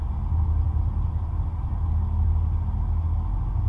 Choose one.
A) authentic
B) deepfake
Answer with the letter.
A